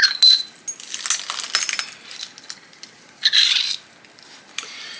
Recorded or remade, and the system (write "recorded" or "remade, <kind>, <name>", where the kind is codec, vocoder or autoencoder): recorded